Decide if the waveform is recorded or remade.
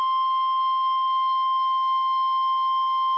remade